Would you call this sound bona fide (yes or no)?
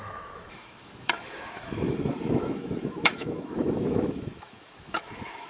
no